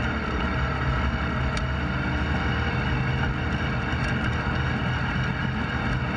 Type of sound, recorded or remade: recorded